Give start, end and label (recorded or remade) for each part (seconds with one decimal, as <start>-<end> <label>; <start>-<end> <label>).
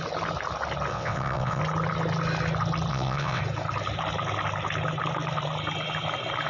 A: 0.0-0.9 recorded; 0.9-1.6 remade; 1.6-2.9 recorded; 2.9-3.4 remade; 3.4-6.5 recorded